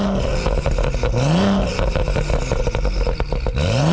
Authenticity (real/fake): real